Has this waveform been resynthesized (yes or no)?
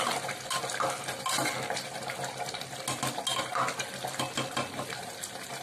no